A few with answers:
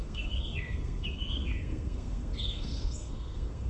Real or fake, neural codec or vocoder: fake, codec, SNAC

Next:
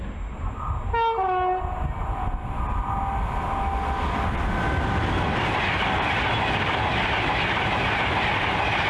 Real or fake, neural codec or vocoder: real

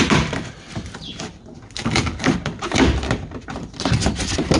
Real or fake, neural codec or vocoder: real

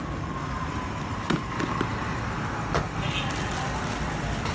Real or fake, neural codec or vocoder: real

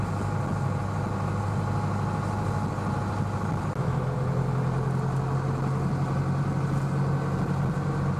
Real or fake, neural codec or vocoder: real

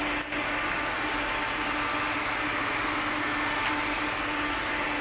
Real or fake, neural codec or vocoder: real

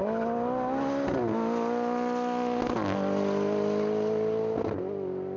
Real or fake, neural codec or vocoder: real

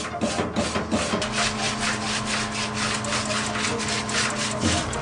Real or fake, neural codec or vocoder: real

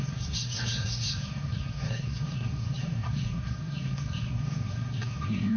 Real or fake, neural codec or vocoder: fake, codec, SNAC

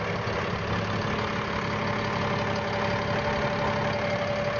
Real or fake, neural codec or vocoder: real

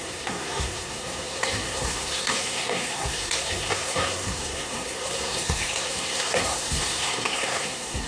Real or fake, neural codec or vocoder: fake, codec, SNAC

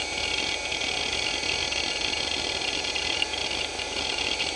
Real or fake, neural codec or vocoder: real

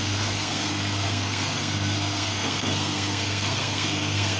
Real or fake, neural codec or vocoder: fake, codec, SNAC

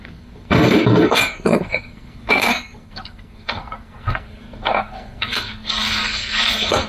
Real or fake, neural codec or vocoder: fake, codec, SNAC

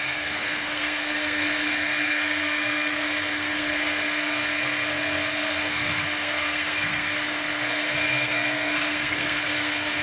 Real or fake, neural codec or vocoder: fake, codec, SNAC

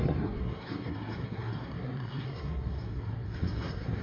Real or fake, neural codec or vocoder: fake, codec, SNAC